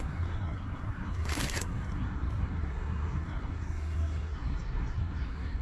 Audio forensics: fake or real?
fake